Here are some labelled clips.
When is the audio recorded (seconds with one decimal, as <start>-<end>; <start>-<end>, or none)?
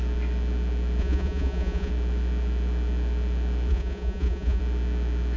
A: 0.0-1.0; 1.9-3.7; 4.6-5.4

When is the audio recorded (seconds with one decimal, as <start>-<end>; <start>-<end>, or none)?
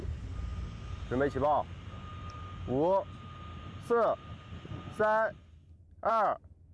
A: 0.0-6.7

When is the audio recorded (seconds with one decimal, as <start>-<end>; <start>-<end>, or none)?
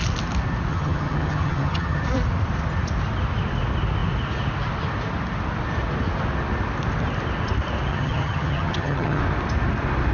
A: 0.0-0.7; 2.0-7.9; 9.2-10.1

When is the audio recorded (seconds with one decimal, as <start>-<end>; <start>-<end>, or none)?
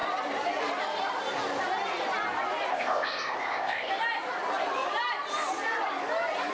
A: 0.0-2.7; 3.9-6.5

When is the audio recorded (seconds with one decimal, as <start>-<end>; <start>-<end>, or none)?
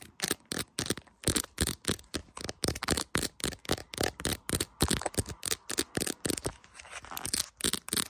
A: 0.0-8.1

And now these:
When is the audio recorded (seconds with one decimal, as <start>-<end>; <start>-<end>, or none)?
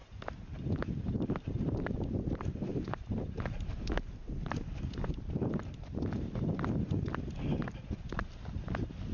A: 0.0-9.1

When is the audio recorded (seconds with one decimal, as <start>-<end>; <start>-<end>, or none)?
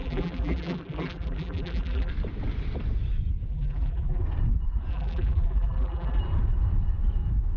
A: 2.1-3.5; 4.2-4.9; 6.2-7.6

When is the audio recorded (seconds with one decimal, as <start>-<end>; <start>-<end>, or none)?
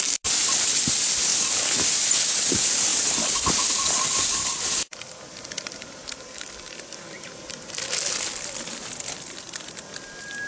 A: 0.0-1.3; 2.2-2.9; 5.2-10.5